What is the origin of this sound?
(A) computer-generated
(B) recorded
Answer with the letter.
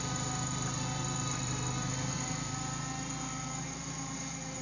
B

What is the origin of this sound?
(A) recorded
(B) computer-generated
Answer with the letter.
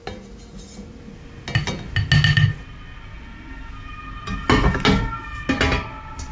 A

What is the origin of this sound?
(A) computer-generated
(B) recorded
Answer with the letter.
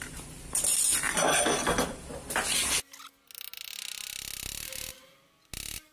B